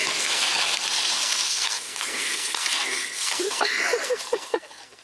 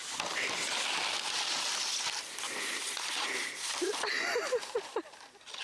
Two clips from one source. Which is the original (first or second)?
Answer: second